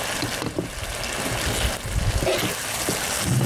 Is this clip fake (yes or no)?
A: no